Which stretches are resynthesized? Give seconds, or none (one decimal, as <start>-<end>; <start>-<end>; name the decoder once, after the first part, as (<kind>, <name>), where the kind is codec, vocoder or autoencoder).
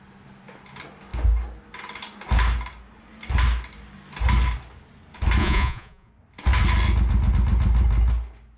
5.4-6.1 (vocoder, Vocos)